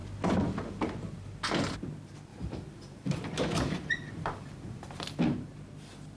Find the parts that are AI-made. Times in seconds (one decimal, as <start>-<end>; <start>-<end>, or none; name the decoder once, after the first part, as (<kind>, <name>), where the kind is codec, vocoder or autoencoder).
2.3-5.2 (vocoder, BigVGAN v2)

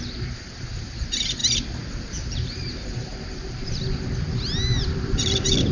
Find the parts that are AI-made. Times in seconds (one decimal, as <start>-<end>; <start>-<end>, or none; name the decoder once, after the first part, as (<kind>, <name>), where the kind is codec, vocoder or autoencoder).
0.0-1.4 (vocoder, BigVGAN v2); 2.2-3.1; 4.8-5.7

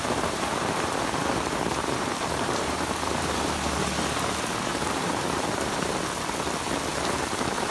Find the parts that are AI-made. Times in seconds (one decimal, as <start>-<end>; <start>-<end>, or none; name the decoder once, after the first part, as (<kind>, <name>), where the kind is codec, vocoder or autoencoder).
0.0-3.8 (vocoder, BigVGAN v2); 4.7-5.9; 6.9-7.7

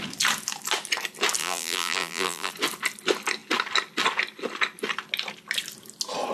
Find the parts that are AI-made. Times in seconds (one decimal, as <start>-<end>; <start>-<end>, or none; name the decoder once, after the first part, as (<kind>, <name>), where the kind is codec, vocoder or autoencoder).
1.4-2.5 (vocoder, BigVGAN v2)

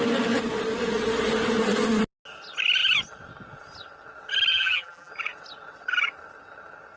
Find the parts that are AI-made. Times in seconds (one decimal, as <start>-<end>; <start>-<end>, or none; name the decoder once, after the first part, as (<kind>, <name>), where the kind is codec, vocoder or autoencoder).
4.5-5.1 (vocoder, BigVGAN v2)